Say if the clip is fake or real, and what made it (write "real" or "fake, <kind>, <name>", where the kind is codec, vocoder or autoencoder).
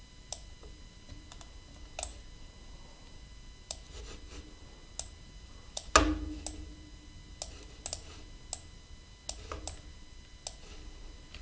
real